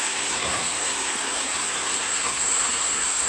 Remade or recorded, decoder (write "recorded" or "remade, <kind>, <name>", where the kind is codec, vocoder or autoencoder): remade, codec, SNAC